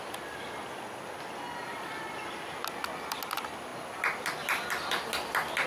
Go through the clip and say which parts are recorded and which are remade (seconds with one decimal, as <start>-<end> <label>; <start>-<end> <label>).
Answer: 0.0-5.7 recorded